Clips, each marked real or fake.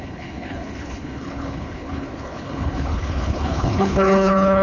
fake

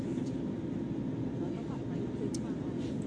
real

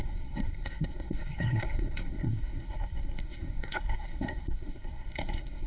fake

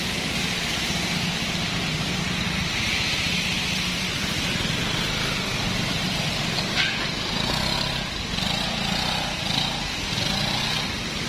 real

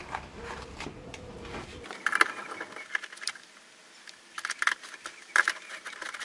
real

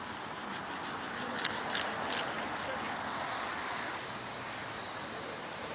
real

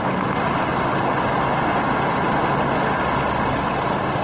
real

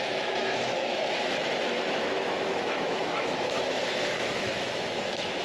fake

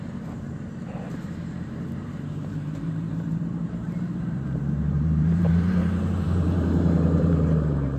fake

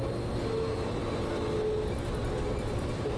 real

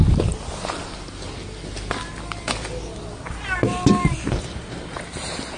real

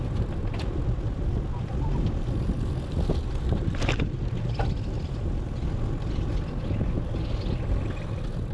real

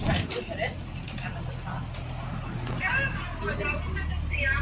real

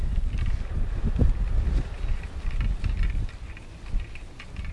real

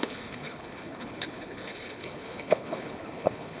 fake